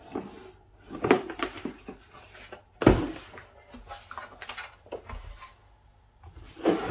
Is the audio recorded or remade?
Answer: recorded